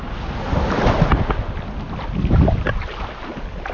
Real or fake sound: real